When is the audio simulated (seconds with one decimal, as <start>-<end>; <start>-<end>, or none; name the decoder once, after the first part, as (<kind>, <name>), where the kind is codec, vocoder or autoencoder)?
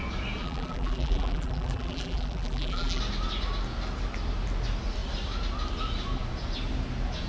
0.4-3.0 (vocoder, BigVGAN v2)